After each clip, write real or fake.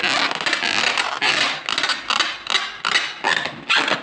real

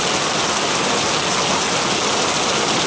real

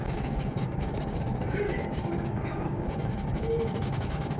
fake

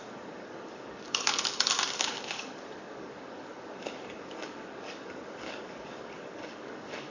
fake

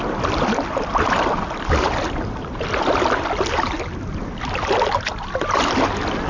real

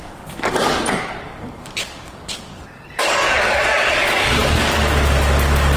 fake